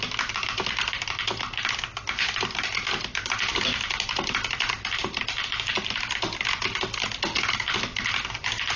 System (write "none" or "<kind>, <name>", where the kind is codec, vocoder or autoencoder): none